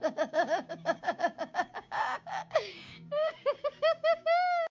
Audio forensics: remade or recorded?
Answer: remade